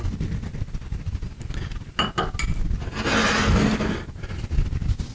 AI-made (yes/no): no